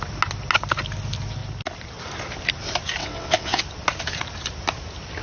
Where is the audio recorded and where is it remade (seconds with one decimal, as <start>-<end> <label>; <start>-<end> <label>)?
0.0-3.0 recorded; 3.0-3.6 remade; 3.6-5.2 recorded